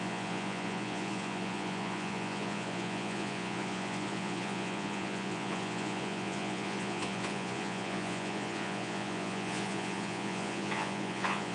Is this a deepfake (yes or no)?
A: yes